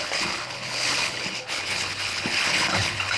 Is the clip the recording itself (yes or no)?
no